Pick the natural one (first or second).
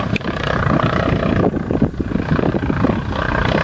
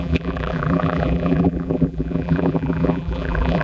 first